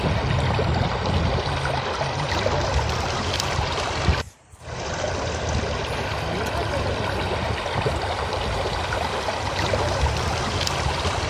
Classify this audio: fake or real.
real